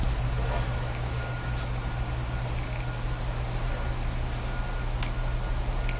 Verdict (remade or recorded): recorded